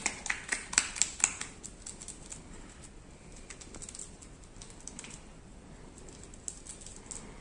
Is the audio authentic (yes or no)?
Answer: yes